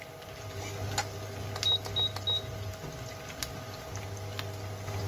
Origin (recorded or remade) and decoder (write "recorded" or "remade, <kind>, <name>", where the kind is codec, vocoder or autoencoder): recorded